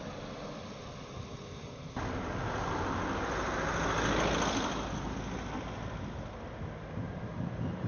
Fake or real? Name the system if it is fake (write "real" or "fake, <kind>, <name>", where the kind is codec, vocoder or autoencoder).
real